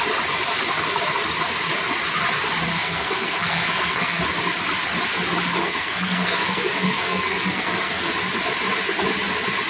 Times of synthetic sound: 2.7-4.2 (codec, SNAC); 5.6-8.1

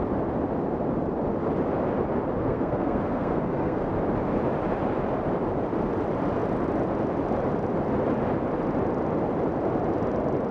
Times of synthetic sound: 2.4-3.9 (codec, SNAC)

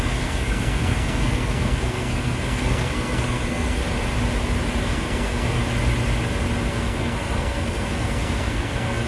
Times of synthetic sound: 0.0-3.8 (codec, SNAC); 4.8-5.6; 6.7-9.1

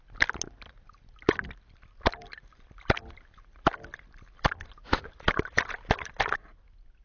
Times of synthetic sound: none